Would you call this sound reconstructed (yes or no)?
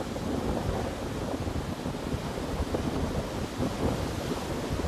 no